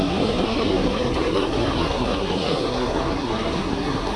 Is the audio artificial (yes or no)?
yes